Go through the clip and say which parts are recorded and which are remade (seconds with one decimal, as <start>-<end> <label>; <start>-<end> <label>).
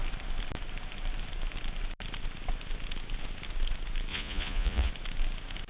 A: 0.0-4.1 recorded; 4.1-4.9 remade; 4.9-5.7 recorded